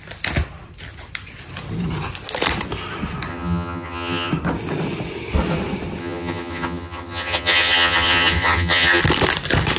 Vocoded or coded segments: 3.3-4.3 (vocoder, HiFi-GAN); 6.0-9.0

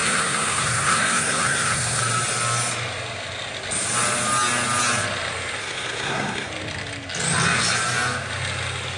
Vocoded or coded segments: 0.0-2.0 (codec, SNAC); 5.6-6.5

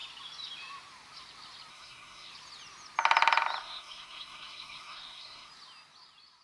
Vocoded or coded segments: 1.7-2.3 (codec, SNAC); 3.6-5.5

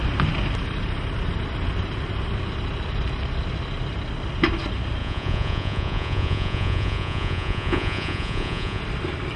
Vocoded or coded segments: 5.0-8.8 (vocoder, Vocos)

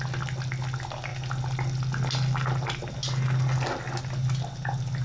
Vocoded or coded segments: none

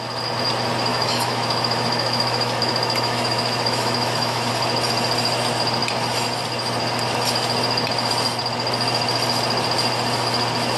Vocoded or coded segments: 0.9-4.5 (autoencoder, DAC-VAE)

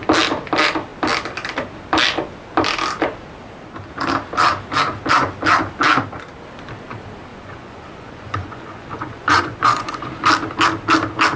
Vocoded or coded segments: 7.3-10.1 (vocoder, Vocos)